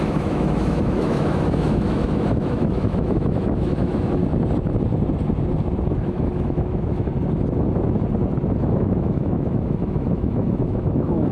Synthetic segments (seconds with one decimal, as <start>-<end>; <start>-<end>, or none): 0.0-4.2; 6.1-7.1; 8.6-11.3